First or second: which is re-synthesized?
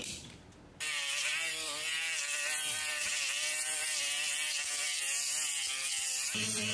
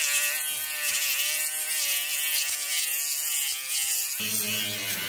first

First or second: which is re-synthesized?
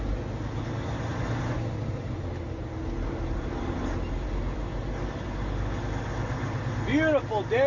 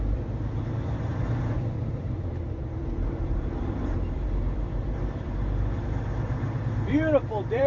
second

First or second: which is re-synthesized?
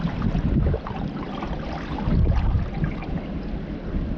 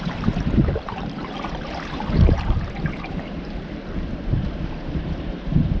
second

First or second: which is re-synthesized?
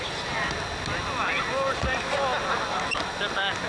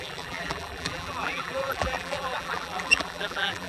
second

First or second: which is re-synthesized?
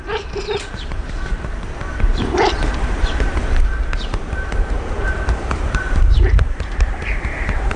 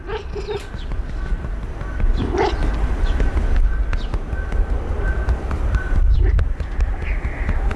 first